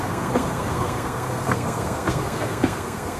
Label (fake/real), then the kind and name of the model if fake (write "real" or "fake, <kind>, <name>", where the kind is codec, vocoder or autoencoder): fake, codec, SNAC